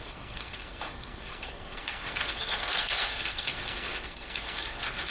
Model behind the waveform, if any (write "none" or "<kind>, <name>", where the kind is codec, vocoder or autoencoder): codec, SNAC